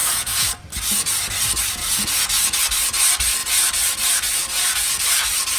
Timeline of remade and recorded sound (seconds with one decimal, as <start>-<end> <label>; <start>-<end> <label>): 0.0-0.5 remade; 0.5-1.8 recorded; 1.8-2.6 remade; 2.6-3.4 recorded; 3.4-5.0 remade; 5.0-5.6 recorded